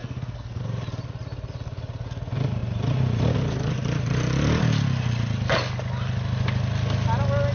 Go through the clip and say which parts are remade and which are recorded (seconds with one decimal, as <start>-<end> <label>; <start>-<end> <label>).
0.0-0.6 remade; 0.6-7.5 recorded